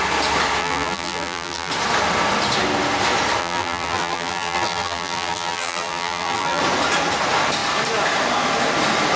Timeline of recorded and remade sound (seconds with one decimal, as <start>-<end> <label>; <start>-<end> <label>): 0.0-0.6 recorded; 0.6-1.7 remade; 1.7-3.4 recorded; 3.4-6.6 remade; 6.6-9.2 recorded